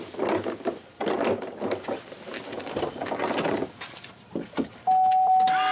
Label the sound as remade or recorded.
recorded